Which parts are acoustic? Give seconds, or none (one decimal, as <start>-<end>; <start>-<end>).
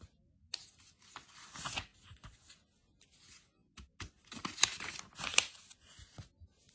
0.0-6.7